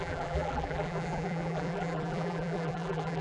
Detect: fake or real fake